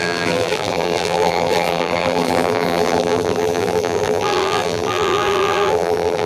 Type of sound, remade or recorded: remade